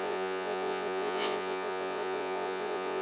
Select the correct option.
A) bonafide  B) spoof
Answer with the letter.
B